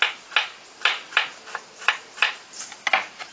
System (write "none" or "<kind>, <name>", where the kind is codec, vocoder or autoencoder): none